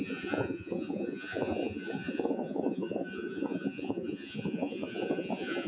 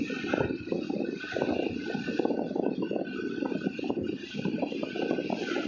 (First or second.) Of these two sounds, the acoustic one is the second